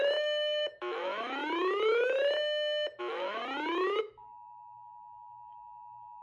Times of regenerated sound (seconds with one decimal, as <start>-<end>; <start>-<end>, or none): 0.0-1.4; 3.0-3.4; 4.0-6.2